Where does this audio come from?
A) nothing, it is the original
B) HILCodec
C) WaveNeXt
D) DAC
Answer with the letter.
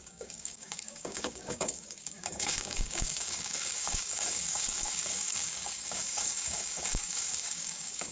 D